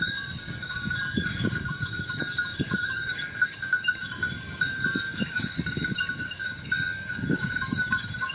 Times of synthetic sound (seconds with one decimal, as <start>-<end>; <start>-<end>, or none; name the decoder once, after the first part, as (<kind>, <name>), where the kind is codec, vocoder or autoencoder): 0.0-8.3 (codec, DAC)